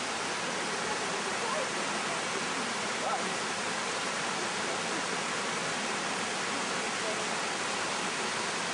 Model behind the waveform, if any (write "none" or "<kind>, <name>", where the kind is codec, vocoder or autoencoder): none